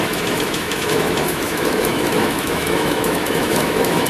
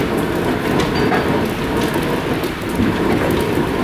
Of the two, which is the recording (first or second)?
second